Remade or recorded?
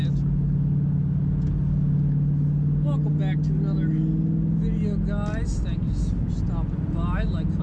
recorded